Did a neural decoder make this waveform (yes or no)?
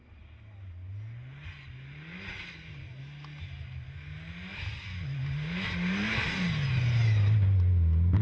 no